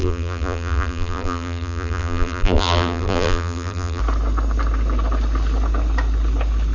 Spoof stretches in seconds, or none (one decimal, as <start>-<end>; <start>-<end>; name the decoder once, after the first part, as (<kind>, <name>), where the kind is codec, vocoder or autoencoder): 0.0-4.0 (vocoder, BigVGAN v2)

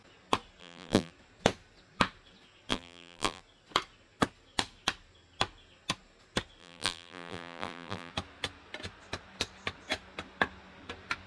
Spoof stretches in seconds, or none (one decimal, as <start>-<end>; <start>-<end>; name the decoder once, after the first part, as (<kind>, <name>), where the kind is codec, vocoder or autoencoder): 0.6-1.1 (vocoder, BigVGAN v2); 2.7-3.4; 6.6-8.1

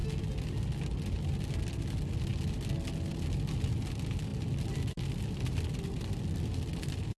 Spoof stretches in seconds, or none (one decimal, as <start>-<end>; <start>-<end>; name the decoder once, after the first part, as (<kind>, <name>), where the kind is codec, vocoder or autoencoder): none

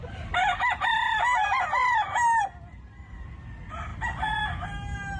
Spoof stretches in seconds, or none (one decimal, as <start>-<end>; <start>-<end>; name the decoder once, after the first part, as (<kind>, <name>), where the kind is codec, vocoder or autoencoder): 1.8-2.4 (vocoder, BigVGAN v2)

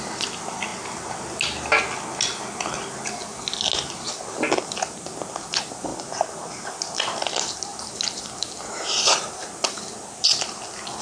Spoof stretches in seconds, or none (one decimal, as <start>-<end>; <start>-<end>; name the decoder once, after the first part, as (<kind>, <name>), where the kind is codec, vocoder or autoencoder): 5.9-6.7 (vocoder, BigVGAN v2)

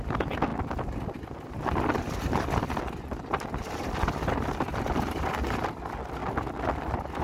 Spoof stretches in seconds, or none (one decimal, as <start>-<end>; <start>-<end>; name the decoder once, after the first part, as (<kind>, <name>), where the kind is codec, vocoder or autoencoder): 0.0-0.5 (vocoder, BigVGAN v2); 4.8-6.2